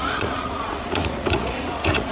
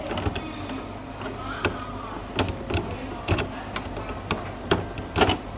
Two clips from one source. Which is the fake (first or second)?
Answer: first